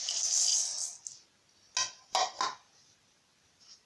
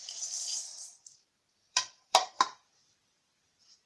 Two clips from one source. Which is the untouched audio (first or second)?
first